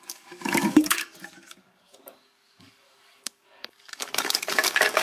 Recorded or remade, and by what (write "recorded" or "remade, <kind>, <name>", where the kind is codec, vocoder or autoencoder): remade, codec, DAC